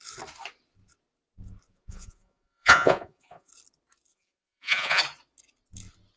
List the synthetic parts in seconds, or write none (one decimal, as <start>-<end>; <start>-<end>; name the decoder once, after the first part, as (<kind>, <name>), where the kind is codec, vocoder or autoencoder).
1.7-3.5 (vocoder, Vocos); 4.1-5.0